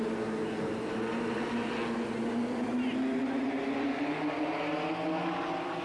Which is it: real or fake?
real